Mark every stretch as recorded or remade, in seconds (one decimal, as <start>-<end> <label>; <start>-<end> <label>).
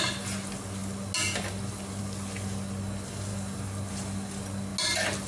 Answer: 0.0-5.3 recorded